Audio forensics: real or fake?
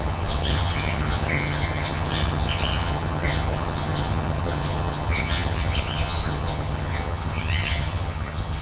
fake